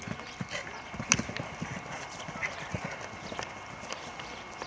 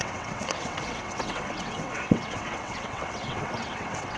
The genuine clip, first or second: first